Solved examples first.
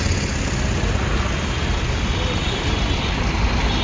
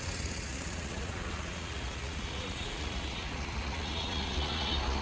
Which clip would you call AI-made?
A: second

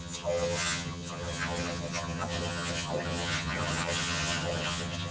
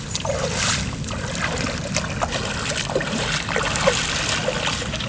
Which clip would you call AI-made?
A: first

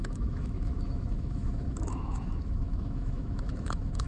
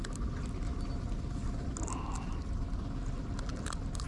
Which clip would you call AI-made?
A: first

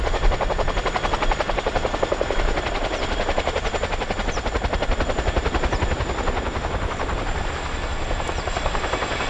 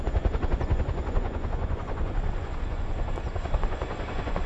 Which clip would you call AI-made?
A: second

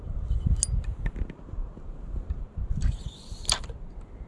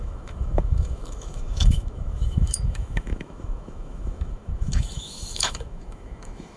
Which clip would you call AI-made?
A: second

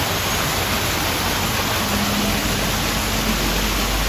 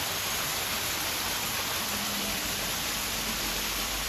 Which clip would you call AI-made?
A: second